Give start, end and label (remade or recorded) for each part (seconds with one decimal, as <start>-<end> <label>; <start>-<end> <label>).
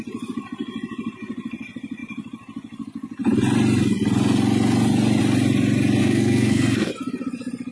0.0-6.0 recorded; 6.0-6.9 remade; 6.9-7.7 recorded